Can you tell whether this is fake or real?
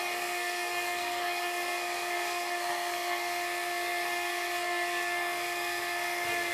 fake